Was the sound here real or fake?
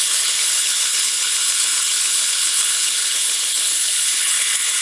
fake